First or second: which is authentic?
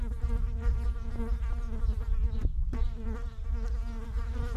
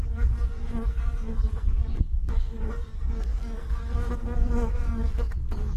first